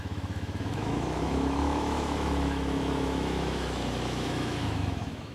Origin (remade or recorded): remade